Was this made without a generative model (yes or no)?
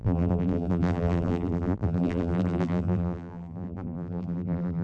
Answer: no